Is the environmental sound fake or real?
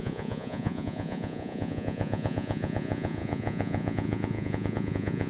fake